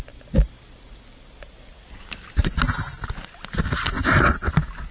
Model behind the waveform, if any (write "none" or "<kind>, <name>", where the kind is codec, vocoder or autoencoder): none